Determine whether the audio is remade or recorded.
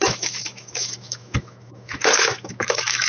remade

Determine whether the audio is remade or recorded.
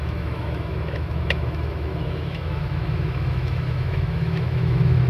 remade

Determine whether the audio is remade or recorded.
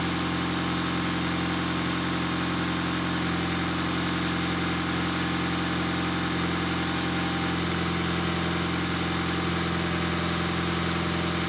recorded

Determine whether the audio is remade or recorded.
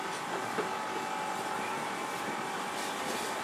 recorded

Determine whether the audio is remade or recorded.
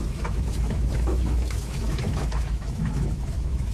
remade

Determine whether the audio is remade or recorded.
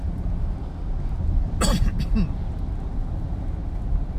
recorded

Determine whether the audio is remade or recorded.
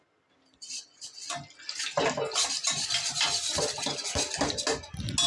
recorded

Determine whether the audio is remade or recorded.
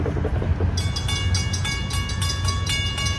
recorded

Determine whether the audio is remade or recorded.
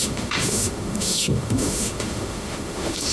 remade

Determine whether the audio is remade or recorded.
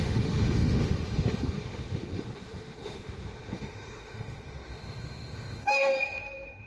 remade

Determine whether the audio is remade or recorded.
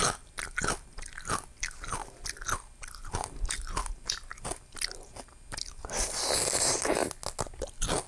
recorded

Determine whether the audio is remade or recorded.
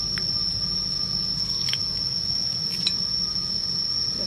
recorded